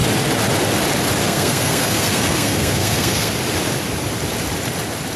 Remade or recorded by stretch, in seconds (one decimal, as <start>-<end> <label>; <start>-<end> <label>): 0.0-1.2 recorded; 1.2-3.3 remade; 3.3-5.2 recorded